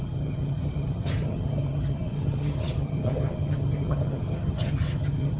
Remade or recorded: remade